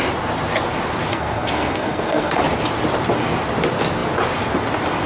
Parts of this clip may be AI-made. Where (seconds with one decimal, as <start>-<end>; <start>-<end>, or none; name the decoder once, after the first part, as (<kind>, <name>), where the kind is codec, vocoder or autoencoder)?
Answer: 1.1-2.4 (codec, SNAC)